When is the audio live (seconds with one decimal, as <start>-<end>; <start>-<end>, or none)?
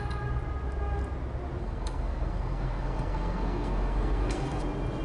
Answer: 0.0-1.6; 4.6-5.0